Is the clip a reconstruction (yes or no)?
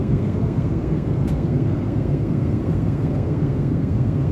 yes